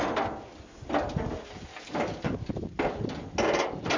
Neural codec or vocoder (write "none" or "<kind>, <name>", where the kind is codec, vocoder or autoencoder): none